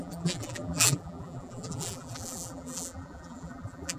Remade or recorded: remade